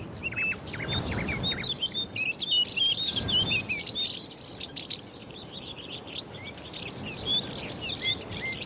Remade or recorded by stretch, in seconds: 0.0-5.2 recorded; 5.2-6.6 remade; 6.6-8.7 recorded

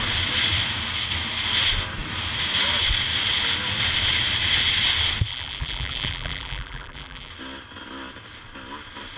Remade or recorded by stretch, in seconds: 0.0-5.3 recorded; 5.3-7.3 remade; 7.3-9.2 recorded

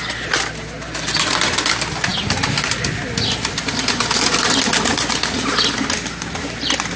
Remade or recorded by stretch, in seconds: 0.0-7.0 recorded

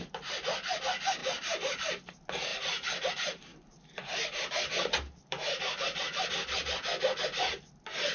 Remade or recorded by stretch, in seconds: 0.0-1.2 recorded; 1.2-2.1 remade; 2.1-3.5 recorded; 3.5-6.3 remade; 6.3-8.1 recorded